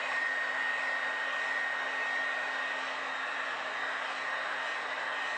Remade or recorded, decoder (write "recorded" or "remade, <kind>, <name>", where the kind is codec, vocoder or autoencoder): recorded